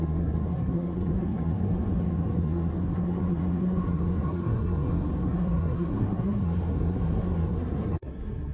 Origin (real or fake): fake